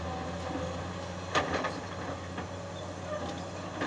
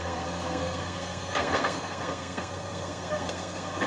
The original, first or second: first